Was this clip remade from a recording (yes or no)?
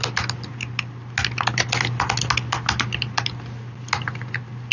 no